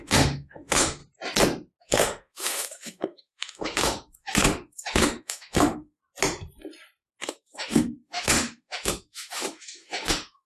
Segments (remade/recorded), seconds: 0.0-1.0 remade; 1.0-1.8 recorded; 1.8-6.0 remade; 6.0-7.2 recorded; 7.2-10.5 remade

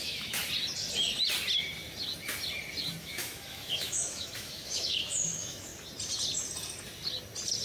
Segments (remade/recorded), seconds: 0.0-0.4 remade; 0.4-3.0 recorded; 3.0-5.7 remade; 5.7-7.6 recorded